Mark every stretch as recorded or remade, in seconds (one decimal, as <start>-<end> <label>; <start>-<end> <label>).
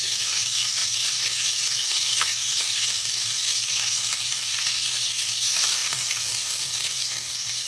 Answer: 0.0-7.7 remade